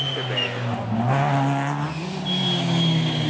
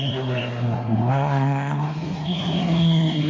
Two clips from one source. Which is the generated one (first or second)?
second